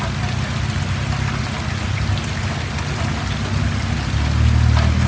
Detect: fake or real real